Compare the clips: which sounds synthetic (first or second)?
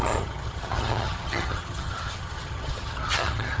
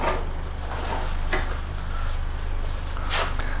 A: first